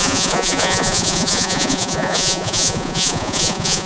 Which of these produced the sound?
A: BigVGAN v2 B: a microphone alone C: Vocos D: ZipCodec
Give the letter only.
C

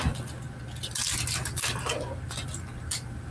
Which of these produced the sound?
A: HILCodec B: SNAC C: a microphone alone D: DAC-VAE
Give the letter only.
C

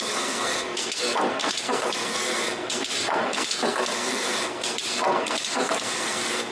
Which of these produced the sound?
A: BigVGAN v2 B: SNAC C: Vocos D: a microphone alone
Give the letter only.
B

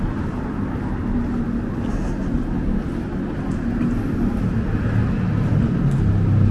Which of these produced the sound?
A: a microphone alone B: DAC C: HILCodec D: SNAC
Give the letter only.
A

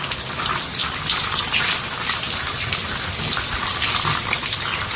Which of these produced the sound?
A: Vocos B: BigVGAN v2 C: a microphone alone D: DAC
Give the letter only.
C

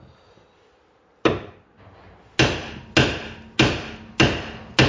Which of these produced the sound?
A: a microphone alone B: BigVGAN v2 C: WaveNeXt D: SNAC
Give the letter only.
A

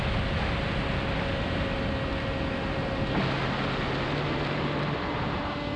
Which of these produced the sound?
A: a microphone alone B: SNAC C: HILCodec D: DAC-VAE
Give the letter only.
A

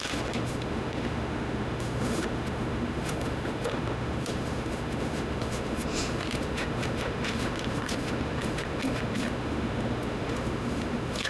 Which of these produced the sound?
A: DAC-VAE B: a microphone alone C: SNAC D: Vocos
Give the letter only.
A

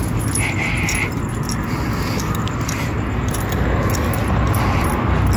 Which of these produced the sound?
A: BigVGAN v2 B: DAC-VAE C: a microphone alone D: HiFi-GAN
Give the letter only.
C